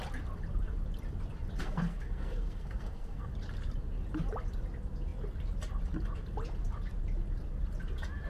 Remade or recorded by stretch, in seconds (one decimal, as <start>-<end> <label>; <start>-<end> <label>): 0.0-1.6 recorded; 1.6-3.3 remade; 3.3-8.3 recorded